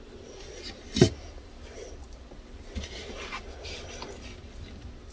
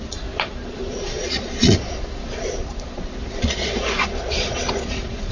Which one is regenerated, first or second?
second